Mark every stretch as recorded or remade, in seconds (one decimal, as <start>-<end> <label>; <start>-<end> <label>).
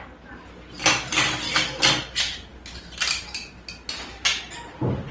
0.0-5.1 recorded